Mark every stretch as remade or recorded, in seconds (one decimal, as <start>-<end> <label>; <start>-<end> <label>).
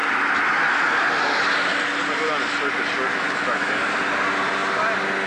0.0-3.1 recorded; 3.1-3.9 remade; 3.9-5.3 recorded